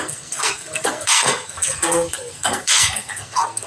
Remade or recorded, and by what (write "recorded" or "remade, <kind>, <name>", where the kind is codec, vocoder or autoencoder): remade, codec, SNAC